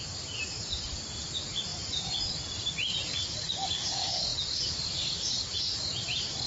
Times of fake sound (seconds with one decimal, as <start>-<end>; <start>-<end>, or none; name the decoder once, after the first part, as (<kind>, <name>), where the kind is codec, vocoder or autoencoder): 1.7-2.4 (vocoder, BigVGAN v2)